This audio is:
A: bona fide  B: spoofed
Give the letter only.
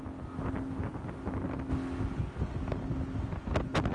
A